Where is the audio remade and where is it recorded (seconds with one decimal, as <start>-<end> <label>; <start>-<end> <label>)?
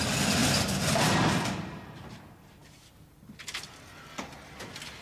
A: 0.0-2.6 recorded; 2.6-3.7 remade; 3.7-5.0 recorded